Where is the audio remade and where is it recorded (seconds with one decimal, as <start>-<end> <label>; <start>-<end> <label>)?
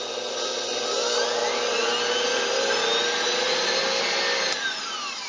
0.0-5.3 recorded